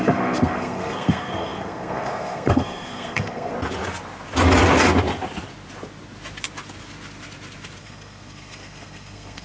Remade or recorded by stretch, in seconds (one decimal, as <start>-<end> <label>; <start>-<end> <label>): 0.0-3.5 remade; 3.5-7.8 recorded; 7.8-9.4 remade

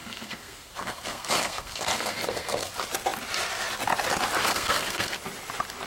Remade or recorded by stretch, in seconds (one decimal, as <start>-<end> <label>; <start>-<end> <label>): 0.0-2.7 remade; 2.7-4.4 recorded; 4.4-5.2 remade; 5.2-5.9 recorded